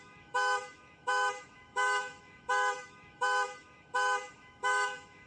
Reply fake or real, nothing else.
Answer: fake